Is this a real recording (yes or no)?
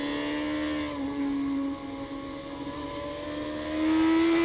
yes